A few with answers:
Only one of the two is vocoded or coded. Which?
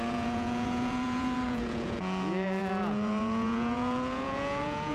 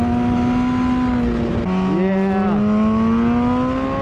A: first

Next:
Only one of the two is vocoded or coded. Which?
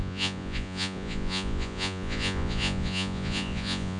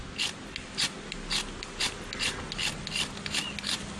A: first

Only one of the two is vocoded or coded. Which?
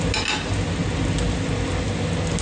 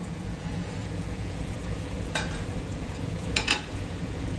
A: second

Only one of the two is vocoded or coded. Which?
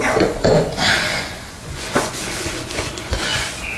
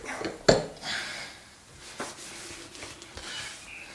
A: first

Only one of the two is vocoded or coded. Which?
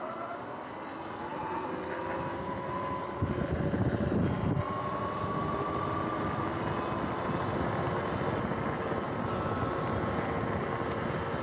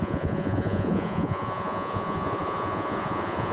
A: second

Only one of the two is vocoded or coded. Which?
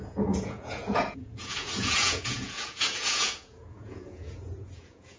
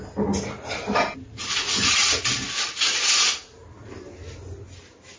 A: first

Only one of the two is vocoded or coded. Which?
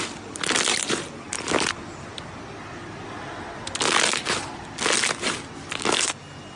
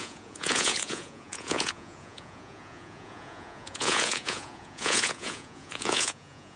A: second